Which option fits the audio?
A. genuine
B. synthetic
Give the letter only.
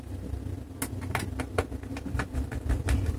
A